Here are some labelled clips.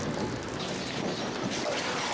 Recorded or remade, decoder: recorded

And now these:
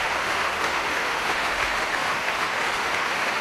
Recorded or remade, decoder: remade, autoencoder, DAC-VAE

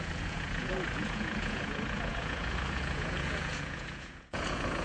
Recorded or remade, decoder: remade, vocoder, Vocos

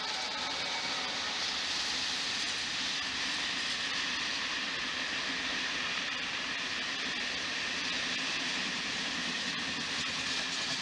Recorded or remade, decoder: recorded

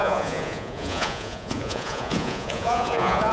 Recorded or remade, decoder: remade, vocoder, Vocos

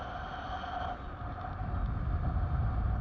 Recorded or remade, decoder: recorded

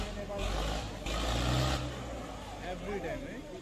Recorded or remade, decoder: recorded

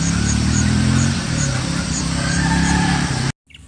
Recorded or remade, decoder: recorded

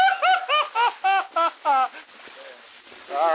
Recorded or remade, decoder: recorded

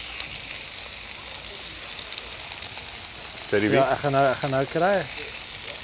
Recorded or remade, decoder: recorded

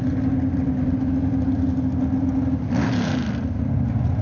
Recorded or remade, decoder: recorded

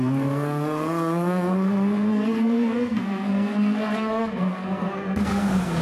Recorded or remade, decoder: remade, codec, SNAC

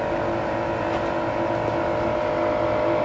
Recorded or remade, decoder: recorded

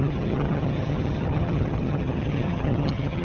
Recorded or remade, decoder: remade, vocoder, HiFi-GAN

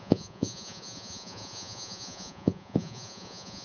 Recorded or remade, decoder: remade, vocoder, Vocos